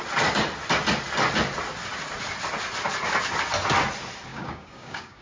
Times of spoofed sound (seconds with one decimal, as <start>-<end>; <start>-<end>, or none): 4.3-5.2